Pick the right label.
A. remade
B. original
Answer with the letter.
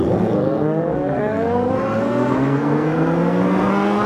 A